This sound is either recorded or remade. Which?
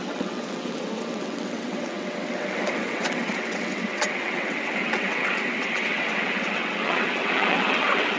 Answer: remade